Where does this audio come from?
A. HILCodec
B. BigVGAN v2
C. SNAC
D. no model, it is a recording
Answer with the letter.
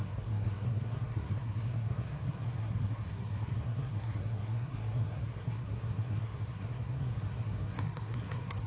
C